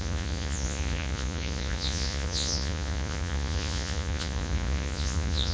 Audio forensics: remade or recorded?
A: remade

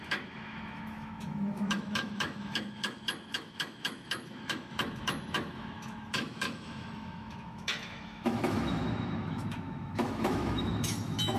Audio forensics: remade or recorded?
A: remade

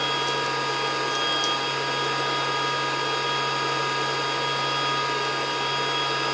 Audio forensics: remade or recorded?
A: recorded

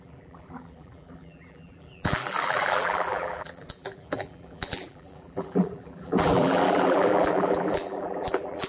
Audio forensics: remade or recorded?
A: remade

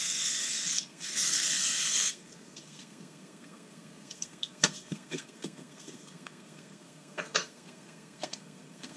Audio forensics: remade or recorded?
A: remade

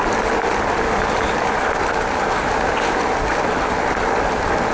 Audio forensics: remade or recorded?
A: recorded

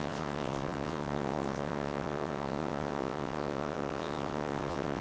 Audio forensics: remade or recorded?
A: remade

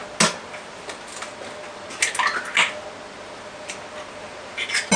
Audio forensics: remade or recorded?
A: recorded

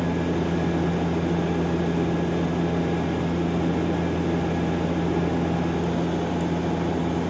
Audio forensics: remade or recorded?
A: recorded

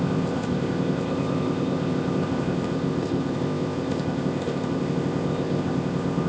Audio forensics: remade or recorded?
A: remade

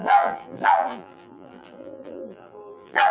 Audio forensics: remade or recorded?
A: remade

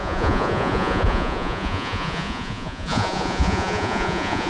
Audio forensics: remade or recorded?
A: remade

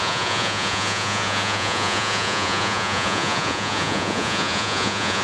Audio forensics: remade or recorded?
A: remade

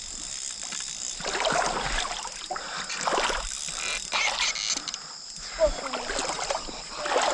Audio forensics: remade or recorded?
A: recorded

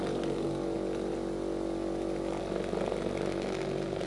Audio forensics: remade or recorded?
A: recorded